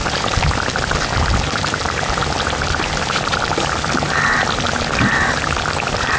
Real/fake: real